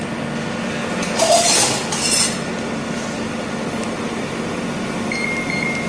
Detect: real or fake real